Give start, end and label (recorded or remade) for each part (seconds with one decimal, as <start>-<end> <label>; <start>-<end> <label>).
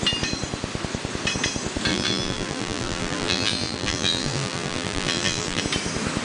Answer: 0.0-1.9 recorded; 1.9-5.6 remade; 5.6-6.2 recorded